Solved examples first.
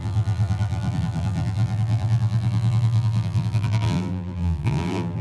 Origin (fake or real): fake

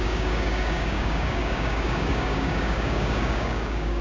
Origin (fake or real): fake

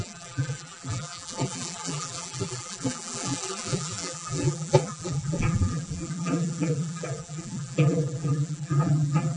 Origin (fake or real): fake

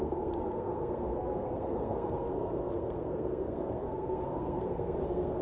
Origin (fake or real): fake